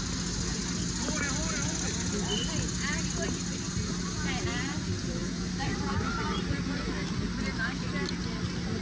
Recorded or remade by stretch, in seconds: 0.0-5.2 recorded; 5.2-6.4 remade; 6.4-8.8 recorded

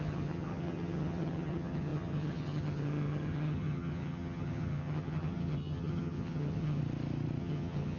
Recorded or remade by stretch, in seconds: 0.0-6.8 remade; 6.8-7.4 recorded; 7.4-8.0 remade

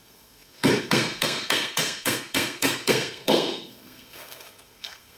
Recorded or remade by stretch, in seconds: 0.0-5.2 remade

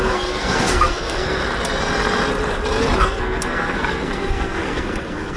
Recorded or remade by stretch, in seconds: 0.0-1.4 remade; 1.4-3.0 recorded; 3.0-5.4 remade

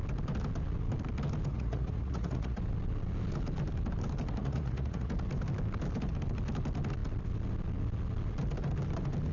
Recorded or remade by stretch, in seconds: 0.0-1.5 recorded; 1.5-2.6 remade; 2.6-4.4 recorded; 4.4-5.1 remade; 5.1-9.3 recorded

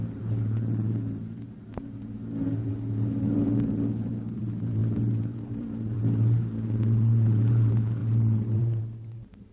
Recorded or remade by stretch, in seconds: 0.0-9.5 remade

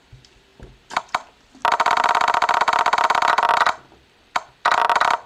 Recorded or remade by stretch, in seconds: 0.0-5.3 recorded